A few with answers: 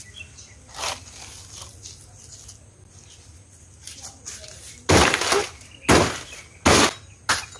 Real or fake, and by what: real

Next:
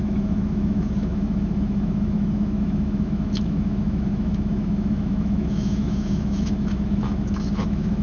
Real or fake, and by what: fake, autoencoder, DAC-VAE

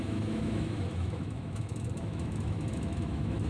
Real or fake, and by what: fake, autoencoder, DAC-VAE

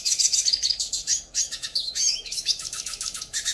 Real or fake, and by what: fake, autoencoder, DAC-VAE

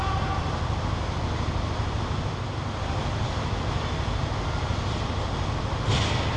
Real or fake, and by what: real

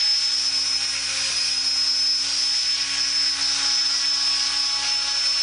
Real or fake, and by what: real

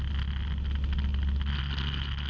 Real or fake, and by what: real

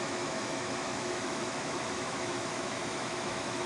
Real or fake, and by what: fake, autoencoder, DAC-VAE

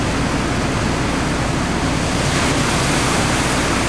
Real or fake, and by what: real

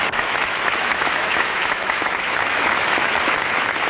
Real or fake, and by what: fake, autoencoder, DAC-VAE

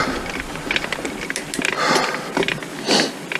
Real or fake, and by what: real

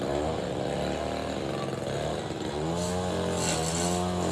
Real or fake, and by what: real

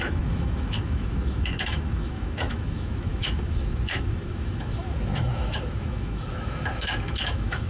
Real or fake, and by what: fake, autoencoder, DAC-VAE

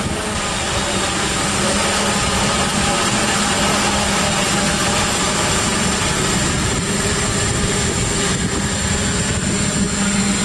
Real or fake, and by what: real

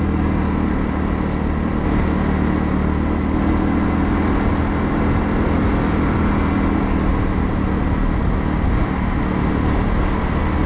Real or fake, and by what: real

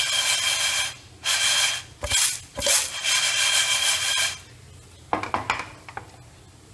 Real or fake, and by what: real